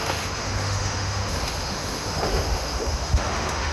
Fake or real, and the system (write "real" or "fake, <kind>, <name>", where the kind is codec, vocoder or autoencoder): fake, autoencoder, DAC-VAE